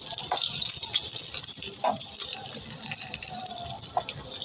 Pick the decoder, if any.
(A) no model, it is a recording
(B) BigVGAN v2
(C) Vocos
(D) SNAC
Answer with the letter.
B